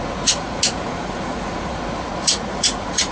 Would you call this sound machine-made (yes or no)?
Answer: yes